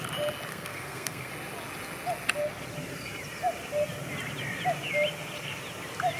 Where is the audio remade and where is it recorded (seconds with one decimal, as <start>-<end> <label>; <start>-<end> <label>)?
0.0-0.5 recorded; 0.5-1.3 remade; 1.3-6.2 recorded